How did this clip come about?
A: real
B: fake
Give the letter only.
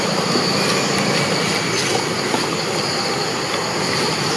A